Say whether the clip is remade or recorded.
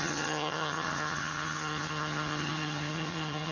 remade